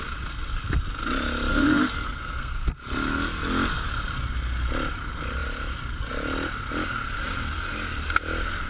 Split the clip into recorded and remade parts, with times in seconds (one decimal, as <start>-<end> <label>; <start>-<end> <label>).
0.0-1.5 recorded; 1.5-2.7 remade; 2.7-8.7 recorded